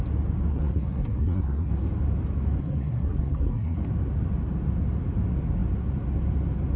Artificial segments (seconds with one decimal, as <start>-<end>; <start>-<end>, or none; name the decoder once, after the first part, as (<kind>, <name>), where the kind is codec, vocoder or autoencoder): 0.5-1.7 (codec, SNAC); 2.6-3.8